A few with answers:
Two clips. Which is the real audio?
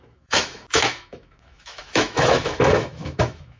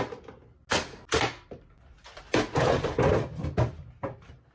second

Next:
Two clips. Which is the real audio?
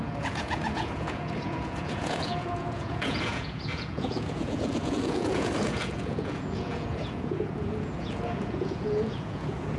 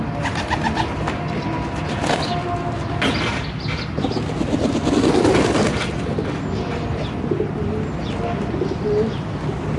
second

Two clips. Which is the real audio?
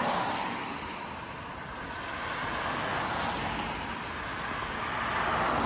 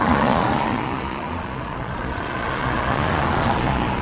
first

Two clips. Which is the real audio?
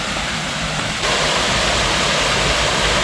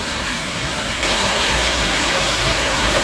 first